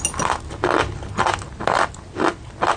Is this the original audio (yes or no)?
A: yes